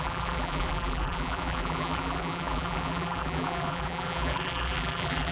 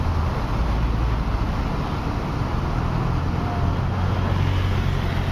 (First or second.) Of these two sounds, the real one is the second